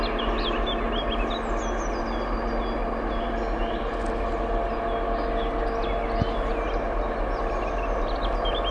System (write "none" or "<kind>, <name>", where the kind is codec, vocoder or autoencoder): none